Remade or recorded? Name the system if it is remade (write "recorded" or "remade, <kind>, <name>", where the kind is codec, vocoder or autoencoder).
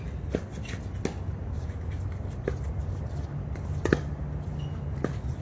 recorded